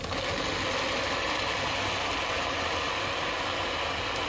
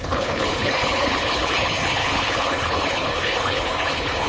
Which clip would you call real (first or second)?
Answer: first